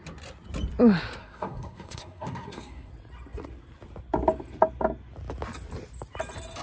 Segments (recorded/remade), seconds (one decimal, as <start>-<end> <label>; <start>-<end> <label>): 0.0-1.2 recorded; 1.2-2.9 remade; 2.9-6.6 recorded